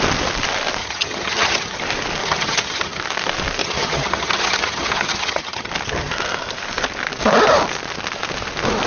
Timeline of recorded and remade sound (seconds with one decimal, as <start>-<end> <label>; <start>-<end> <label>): 0.0-0.8 recorded; 0.8-1.8 remade; 1.8-2.2 recorded; 2.2-3.0 remade; 3.0-3.6 recorded; 3.6-5.7 remade; 5.7-8.9 recorded